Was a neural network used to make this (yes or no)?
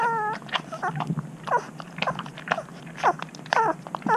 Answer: no